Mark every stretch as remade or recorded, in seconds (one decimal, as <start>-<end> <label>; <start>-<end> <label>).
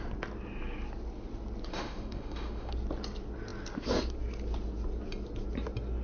0.0-1.7 recorded; 1.7-2.7 remade; 2.7-6.0 recorded